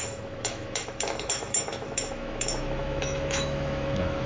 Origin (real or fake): fake